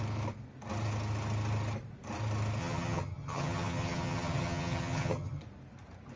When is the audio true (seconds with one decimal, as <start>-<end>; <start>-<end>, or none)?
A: 0.0-2.6; 5.4-6.2